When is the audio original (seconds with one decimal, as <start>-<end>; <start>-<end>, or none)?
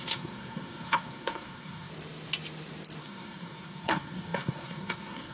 1.9-3.0